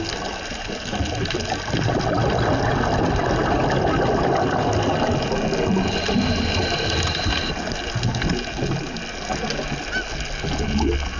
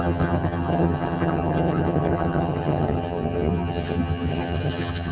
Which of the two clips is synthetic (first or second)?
second